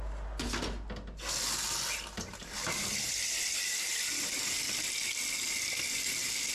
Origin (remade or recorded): recorded